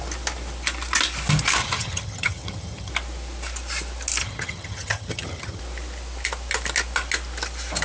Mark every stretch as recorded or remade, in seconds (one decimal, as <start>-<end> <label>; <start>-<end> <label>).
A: 0.0-1.6 recorded; 1.6-2.9 remade; 2.9-4.2 recorded; 4.2-5.6 remade; 5.6-7.8 recorded